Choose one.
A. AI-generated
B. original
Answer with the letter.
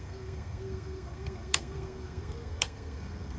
A